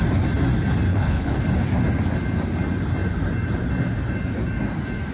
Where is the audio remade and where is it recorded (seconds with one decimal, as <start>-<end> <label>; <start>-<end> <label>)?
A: 0.0-0.9 recorded; 0.9-1.4 remade; 1.4-5.1 recorded